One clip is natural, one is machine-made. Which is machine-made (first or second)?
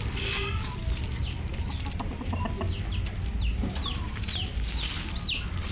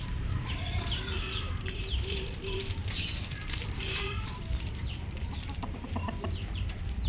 second